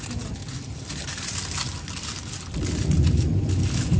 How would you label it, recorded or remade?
recorded